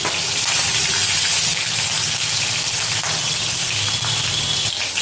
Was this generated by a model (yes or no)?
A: no